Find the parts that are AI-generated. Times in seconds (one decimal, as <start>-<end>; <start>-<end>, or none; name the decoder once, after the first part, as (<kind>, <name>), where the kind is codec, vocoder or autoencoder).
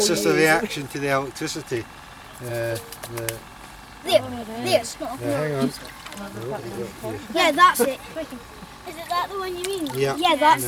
none